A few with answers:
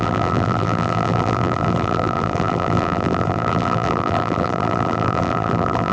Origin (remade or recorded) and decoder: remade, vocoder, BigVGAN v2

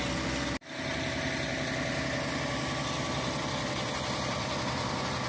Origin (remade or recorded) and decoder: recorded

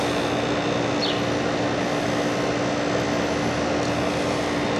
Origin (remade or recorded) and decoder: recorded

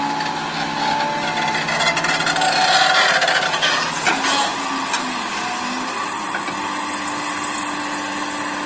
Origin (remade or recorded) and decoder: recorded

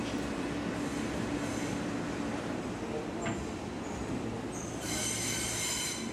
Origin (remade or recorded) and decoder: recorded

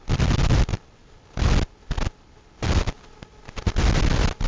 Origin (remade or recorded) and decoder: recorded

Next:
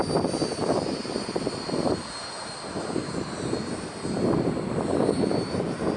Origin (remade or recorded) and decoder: remade, vocoder, BigVGAN v2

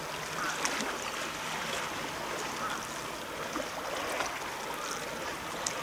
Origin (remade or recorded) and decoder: recorded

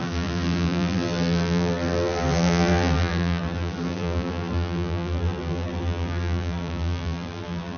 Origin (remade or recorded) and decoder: remade, vocoder, BigVGAN v2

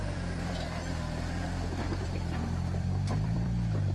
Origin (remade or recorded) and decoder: remade, vocoder, BigVGAN v2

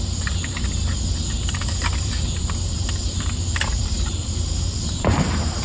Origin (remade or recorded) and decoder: remade, vocoder, BigVGAN v2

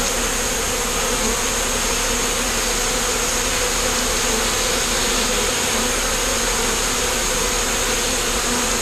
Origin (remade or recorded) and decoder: recorded